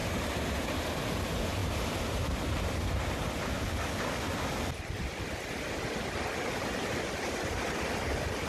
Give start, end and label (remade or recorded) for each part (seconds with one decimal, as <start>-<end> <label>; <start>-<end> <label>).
0.0-1.2 remade; 1.2-1.6 recorded; 1.6-6.1 remade; 6.1-8.5 recorded